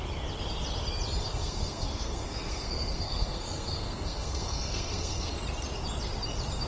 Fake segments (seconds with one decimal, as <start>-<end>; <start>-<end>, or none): 1.3-5.3